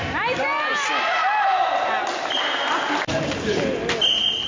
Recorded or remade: recorded